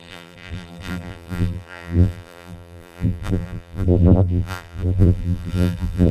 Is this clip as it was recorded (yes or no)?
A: no